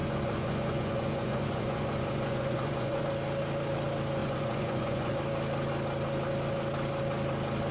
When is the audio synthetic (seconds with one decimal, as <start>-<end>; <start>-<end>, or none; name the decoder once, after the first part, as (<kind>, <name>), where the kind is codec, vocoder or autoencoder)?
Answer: 0.0-3.0 (vocoder, Vocos); 4.2-5.1